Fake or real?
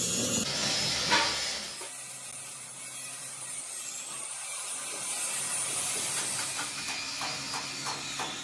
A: real